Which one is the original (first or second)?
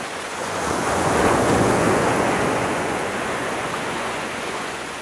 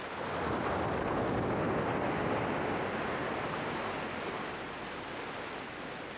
second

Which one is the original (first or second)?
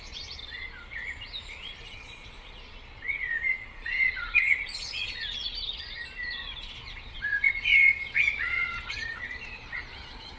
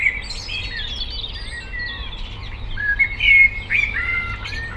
second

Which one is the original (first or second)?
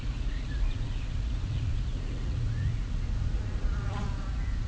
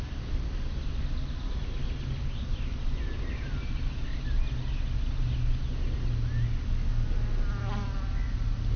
second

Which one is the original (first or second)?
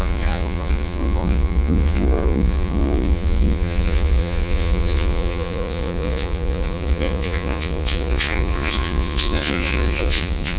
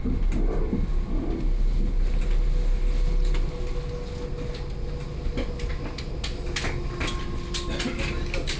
second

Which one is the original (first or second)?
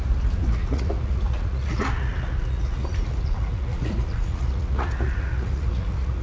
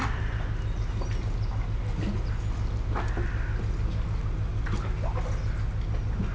second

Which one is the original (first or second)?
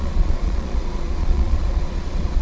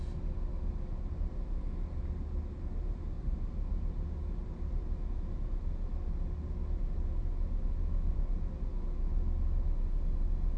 second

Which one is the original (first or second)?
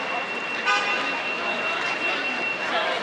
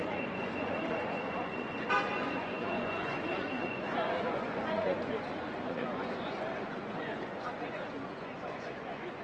first